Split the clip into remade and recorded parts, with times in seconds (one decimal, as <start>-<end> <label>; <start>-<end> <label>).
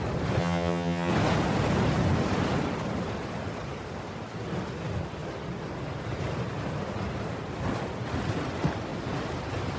0.0-0.4 recorded; 0.4-1.1 remade; 1.1-9.8 recorded